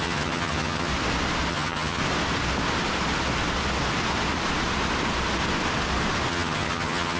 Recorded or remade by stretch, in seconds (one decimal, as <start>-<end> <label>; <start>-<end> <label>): 0.0-0.9 remade; 0.9-1.5 recorded; 1.5-2.0 remade; 2.0-6.3 recorded; 6.3-7.2 remade